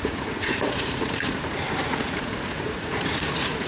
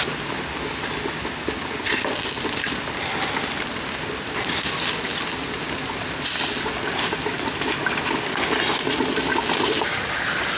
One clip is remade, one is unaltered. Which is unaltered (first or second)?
second